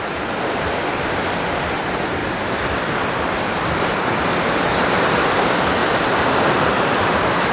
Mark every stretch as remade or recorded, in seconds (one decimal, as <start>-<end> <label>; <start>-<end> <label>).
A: 0.0-2.2 remade; 2.2-4.7 recorded; 4.7-5.8 remade; 5.8-6.5 recorded; 6.5-7.5 remade